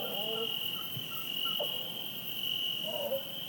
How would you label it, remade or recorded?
recorded